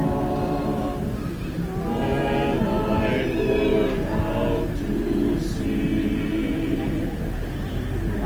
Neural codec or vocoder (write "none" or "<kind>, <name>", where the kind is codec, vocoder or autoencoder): none